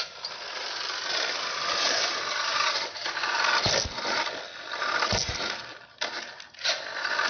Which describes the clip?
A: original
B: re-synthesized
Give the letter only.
A